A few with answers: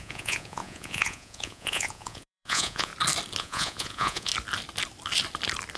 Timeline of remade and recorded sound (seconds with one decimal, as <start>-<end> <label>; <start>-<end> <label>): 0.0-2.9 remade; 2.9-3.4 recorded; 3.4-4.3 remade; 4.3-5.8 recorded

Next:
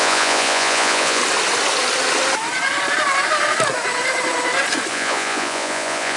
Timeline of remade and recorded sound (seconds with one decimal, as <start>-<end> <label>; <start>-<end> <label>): 0.0-1.2 remade; 1.2-4.9 recorded; 4.9-6.2 remade

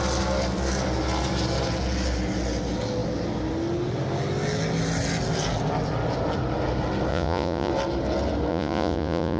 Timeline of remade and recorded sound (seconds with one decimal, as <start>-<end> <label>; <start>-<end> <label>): 0.0-7.1 recorded; 7.1-7.7 remade; 7.7-8.5 recorded; 8.5-9.4 remade

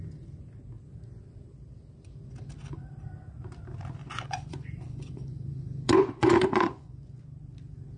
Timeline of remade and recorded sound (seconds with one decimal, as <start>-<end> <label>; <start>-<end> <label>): 0.0-4.0 recorded; 4.0-7.2 remade; 7.2-8.0 recorded

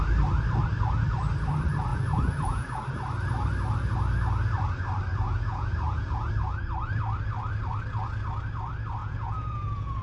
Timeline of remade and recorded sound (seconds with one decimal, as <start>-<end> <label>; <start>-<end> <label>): 0.0-1.9 recorded; 1.9-2.8 remade; 2.8-5.1 recorded; 5.1-6.3 remade; 6.3-9.0 recorded; 9.0-10.0 remade